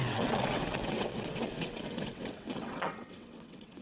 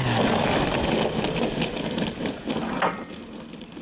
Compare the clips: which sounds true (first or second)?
second